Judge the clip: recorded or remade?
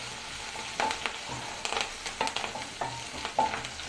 recorded